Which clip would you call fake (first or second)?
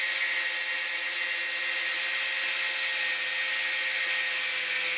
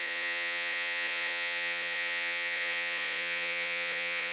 second